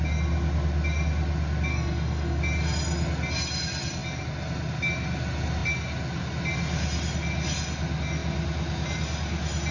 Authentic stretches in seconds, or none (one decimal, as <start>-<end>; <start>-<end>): 0.0-1.7; 2.4-9.7